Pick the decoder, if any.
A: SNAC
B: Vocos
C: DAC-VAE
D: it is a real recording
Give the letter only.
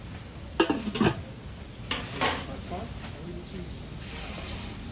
D